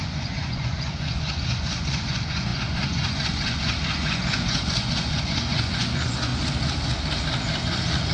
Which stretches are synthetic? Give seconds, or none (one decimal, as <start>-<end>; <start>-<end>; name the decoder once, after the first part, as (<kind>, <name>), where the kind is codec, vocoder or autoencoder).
0.0-6.3 (vocoder, Vocos); 7.6-8.1